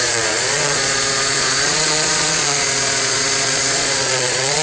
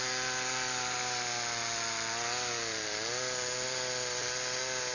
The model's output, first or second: first